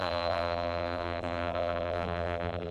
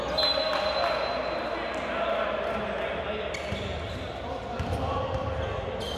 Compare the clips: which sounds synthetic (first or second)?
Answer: first